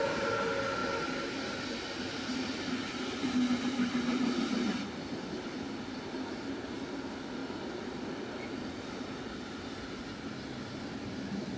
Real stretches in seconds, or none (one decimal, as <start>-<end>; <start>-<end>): 0.0-11.6